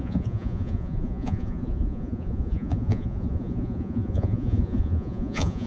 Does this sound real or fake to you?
fake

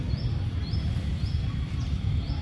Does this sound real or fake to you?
real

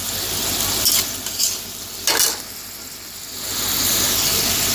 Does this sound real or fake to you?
real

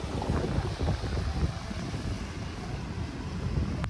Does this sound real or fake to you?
real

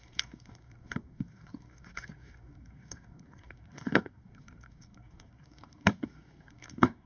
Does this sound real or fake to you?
fake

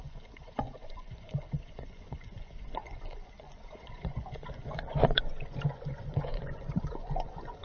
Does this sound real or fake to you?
fake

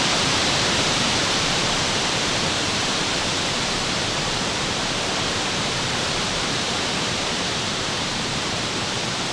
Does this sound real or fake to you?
fake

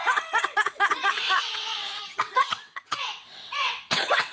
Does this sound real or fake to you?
fake